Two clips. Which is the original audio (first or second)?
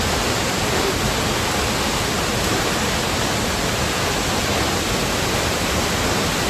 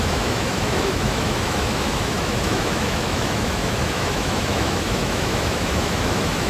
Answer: first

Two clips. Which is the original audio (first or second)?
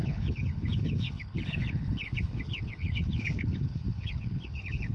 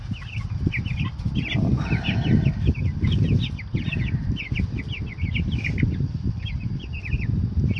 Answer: second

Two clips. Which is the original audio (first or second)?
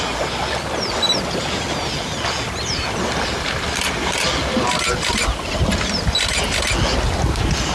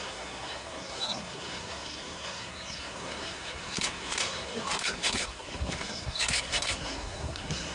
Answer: first